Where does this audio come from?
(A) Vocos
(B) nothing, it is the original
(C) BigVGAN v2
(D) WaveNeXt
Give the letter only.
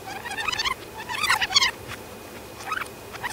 B